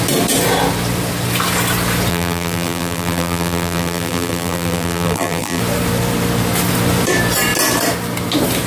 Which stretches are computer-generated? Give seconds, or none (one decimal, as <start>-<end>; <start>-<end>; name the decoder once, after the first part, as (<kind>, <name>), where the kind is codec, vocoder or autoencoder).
2.1-5.6 (vocoder, BigVGAN v2)